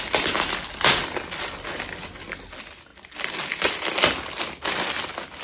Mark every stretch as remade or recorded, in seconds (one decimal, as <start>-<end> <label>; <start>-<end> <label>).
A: 0.0-5.4 recorded